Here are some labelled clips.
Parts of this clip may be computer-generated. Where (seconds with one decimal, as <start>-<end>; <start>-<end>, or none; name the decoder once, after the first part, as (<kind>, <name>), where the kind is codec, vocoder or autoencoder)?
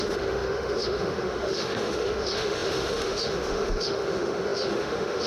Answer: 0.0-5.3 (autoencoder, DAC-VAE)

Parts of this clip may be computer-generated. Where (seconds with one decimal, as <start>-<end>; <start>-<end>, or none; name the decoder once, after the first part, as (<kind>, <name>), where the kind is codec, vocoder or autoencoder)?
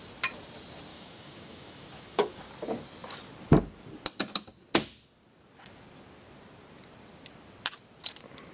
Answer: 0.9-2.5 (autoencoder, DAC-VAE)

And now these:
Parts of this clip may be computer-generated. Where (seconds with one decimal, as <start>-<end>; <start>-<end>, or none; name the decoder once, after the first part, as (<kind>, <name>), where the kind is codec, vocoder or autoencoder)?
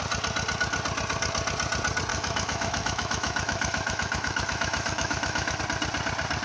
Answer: 2.1-5.6 (autoencoder, DAC-VAE)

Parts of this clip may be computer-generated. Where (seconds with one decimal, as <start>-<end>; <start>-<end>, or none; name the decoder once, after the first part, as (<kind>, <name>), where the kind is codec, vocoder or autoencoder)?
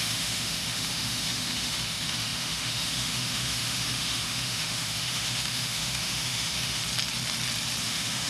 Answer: 0.0-6.8 (autoencoder, DAC-VAE); 7.8-8.3